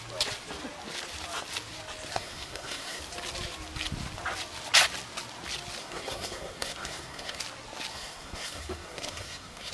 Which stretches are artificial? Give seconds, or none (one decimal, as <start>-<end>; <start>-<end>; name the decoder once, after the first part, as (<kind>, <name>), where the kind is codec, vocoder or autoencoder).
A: 2.1-3.0 (codec, SNAC); 5.8-7.4; 7.9-9.7